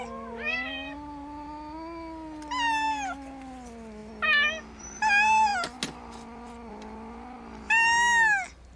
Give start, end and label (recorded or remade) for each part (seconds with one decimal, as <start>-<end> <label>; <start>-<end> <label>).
0.0-8.8 recorded